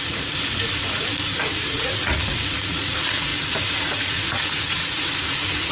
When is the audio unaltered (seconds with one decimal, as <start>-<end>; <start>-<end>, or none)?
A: none